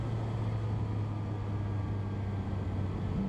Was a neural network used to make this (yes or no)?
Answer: no